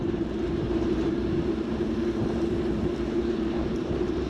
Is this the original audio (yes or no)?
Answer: no